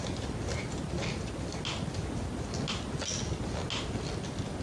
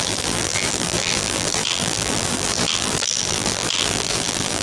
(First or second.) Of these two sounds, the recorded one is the first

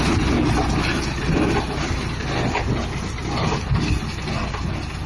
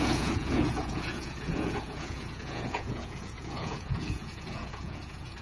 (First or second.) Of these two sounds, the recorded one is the first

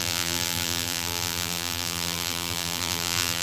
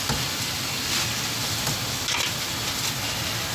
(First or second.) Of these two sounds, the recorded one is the second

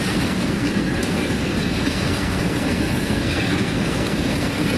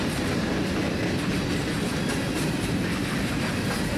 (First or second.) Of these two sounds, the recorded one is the second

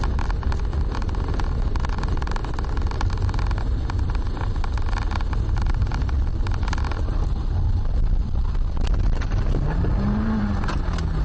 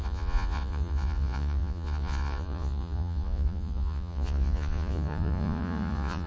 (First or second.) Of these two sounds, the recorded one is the first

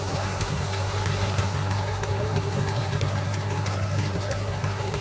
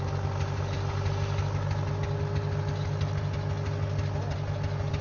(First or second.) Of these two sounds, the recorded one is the second